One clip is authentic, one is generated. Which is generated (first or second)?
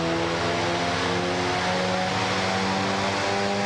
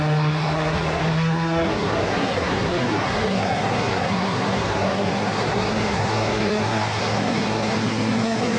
second